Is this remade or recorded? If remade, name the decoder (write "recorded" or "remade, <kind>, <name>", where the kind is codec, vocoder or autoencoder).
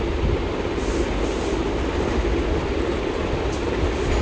recorded